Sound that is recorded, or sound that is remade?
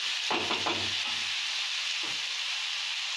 recorded